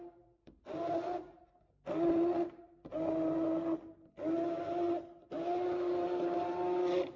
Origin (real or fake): real